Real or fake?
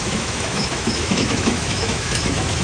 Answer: fake